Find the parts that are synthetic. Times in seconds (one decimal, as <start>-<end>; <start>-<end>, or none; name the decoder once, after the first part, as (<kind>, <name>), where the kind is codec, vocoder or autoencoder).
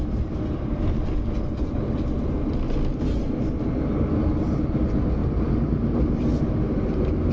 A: 5.2-6.4 (vocoder, BigVGAN v2)